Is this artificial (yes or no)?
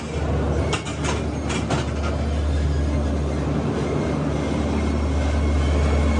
no